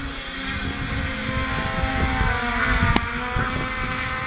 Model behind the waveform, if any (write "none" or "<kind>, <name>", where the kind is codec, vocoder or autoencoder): none